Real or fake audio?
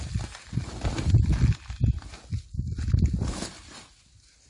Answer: real